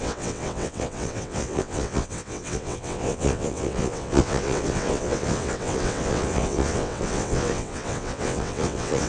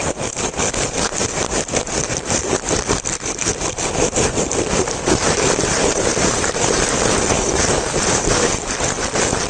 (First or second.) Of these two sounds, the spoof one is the first